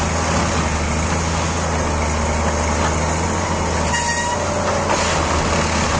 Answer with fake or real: real